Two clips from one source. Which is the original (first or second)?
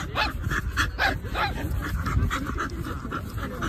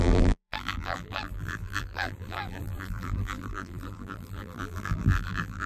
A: first